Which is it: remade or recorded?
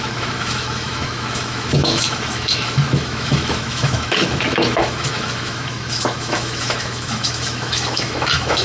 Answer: remade